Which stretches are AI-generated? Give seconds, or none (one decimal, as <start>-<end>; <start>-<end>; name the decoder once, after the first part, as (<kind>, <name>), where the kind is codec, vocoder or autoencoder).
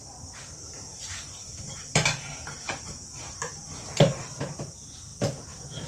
0.0-5.1 (vocoder, BigVGAN v2)